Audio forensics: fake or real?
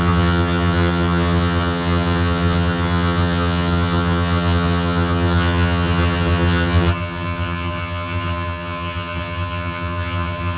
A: fake